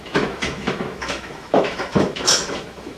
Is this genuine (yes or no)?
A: no